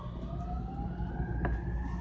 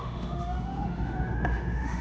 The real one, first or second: first